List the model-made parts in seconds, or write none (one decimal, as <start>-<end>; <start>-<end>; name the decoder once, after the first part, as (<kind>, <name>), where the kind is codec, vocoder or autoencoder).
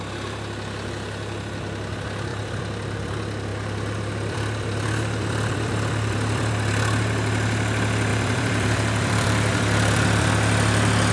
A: 2.3-3.1 (vocoder, BigVGAN v2); 3.5-6.5; 8.1-10.3